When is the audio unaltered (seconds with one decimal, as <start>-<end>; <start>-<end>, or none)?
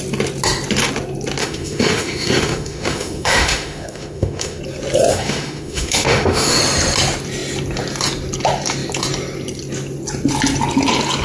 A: 0.0-1.4; 4.6-5.1; 6.6-11.2